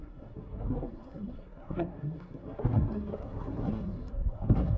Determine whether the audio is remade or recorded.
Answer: remade